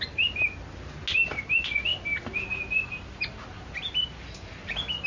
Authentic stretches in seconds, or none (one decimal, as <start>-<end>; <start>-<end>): 0.0-5.1